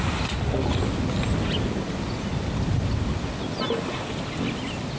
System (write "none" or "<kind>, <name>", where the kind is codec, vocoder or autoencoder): none